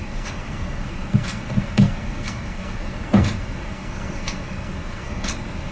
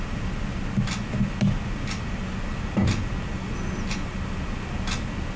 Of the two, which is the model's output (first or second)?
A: first